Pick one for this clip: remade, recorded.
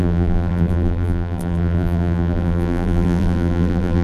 remade